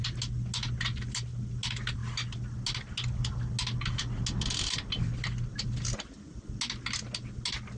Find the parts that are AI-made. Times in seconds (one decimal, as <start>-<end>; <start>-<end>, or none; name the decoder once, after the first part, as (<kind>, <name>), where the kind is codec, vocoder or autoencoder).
none